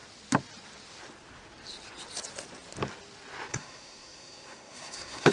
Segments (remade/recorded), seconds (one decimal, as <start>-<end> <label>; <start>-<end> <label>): 0.0-3.5 recorded; 3.5-5.3 remade